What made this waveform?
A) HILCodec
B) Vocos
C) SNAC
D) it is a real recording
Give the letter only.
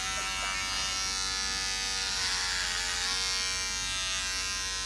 D